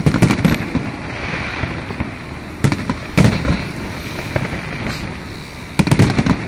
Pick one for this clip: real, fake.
real